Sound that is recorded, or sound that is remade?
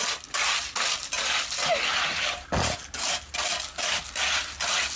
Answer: recorded